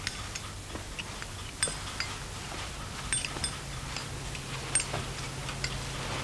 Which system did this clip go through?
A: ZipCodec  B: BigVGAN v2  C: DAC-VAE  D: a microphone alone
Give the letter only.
D